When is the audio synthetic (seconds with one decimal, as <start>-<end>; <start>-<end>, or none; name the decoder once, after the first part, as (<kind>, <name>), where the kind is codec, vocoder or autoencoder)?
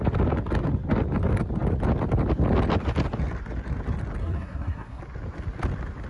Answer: 4.2-5.0 (codec, SNAC)